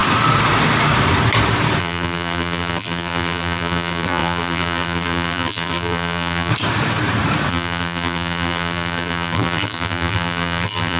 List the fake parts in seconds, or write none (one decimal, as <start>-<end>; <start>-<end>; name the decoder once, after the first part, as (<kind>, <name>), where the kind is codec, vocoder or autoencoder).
1.8-6.5 (vocoder, BigVGAN v2); 7.5-11.0